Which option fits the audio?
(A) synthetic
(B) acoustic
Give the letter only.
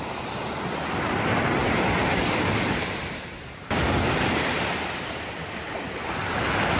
B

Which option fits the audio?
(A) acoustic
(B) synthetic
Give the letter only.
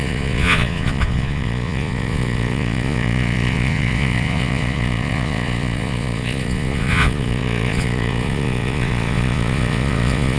B